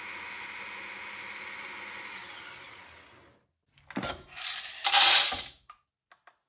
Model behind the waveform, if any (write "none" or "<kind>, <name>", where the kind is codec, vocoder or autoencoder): none